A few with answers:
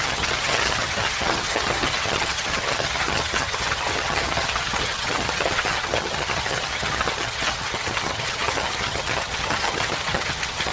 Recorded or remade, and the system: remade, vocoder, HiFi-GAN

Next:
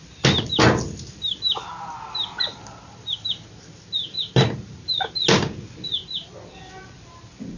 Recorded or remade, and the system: recorded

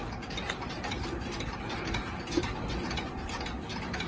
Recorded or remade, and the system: recorded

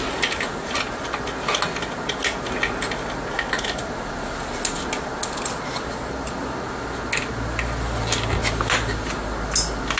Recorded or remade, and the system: recorded